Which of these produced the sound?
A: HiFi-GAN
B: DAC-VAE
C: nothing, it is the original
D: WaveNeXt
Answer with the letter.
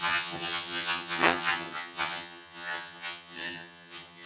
A